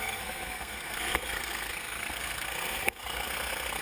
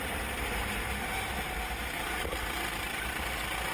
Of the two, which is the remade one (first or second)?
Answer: first